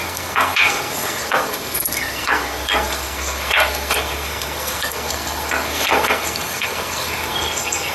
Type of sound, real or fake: fake